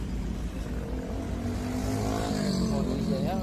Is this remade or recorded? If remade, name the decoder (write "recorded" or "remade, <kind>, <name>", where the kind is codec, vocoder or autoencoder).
recorded